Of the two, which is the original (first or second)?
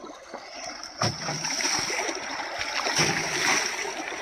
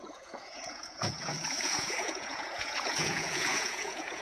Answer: first